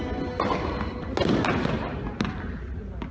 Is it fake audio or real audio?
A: real